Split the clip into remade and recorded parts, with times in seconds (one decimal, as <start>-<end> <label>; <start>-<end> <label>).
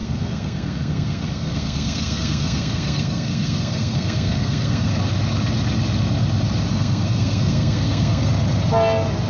0.0-4.9 remade; 4.9-6.7 recorded; 6.7-8.3 remade; 8.3-9.3 recorded